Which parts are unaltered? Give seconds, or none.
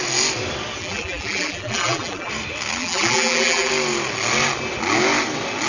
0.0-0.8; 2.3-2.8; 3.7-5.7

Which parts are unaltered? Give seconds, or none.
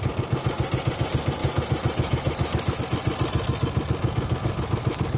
0.0-1.4; 2.8-5.2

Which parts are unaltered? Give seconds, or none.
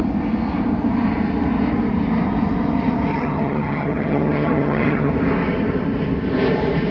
0.0-3.1; 5.1-6.9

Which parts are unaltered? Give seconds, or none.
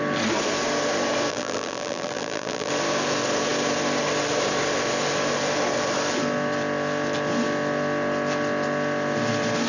0.0-1.3; 2.7-9.7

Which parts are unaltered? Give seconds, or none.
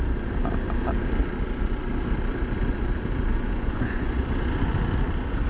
0.0-3.3; 4.2-5.5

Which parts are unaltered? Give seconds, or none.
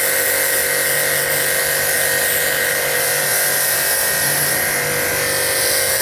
0.0-6.0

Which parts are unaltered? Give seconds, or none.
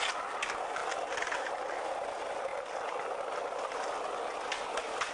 0.0-5.1